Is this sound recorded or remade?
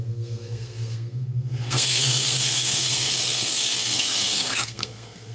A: remade